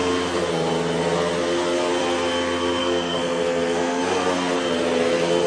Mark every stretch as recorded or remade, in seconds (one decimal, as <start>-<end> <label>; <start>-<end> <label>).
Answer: 0.0-2.8 recorded; 2.8-4.0 remade; 4.0-5.5 recorded